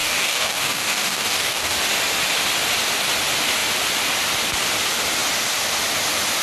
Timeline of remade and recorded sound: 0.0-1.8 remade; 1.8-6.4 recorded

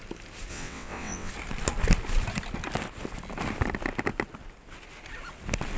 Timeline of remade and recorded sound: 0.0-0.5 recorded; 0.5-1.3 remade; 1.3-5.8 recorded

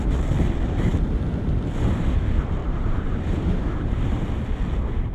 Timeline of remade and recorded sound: 0.0-2.6 recorded; 2.6-4.0 remade; 4.0-5.1 recorded

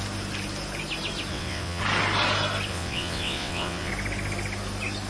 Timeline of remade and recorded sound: 0.0-1.3 recorded; 1.3-1.8 remade; 1.8-2.7 recorded; 2.7-3.9 remade; 3.9-5.1 recorded

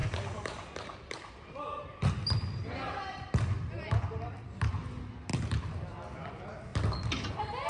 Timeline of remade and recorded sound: 0.0-4.6 remade; 4.6-5.3 recorded; 5.3-6.3 remade; 6.3-6.7 recorded; 6.7-7.7 remade